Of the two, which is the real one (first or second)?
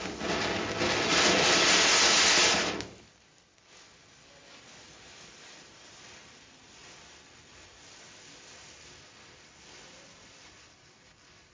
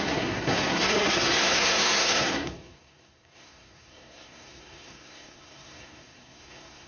first